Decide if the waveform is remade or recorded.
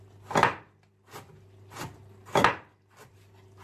recorded